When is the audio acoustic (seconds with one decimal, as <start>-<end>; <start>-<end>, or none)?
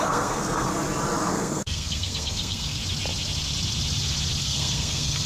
0.7-1.3; 2.8-4.4